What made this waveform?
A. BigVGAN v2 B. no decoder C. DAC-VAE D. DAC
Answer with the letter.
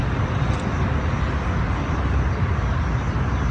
B